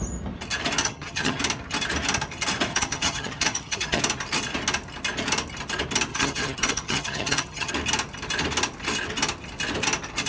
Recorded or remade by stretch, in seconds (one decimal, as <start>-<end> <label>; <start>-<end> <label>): 0.0-0.8 recorded; 0.8-1.4 remade; 1.4-2.7 recorded; 2.7-4.0 remade; 4.0-6.1 recorded; 6.1-7.7 remade; 7.7-10.3 recorded